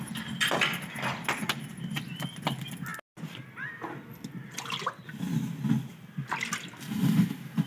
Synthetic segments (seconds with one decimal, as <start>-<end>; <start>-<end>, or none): none